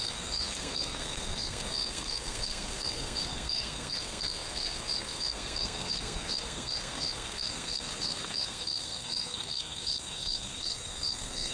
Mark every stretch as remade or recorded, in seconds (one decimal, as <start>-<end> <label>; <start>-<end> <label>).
0.0-11.5 remade